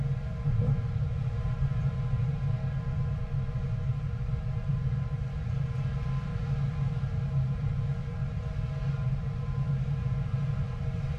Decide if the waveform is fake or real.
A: real